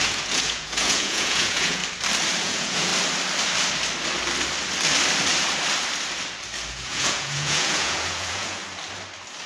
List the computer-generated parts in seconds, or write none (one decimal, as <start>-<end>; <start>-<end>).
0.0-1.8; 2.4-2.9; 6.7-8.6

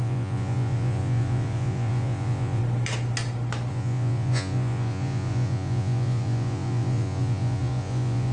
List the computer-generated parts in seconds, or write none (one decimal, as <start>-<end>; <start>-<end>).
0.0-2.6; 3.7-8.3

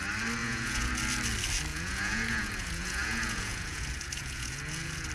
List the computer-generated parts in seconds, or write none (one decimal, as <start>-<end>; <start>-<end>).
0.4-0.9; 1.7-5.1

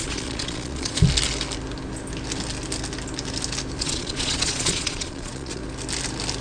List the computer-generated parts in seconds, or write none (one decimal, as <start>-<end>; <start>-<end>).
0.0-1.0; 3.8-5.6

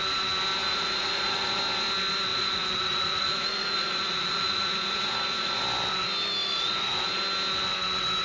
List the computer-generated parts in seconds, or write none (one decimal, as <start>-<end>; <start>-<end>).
0.6-1.6; 2.3-5.6; 6.4-7.2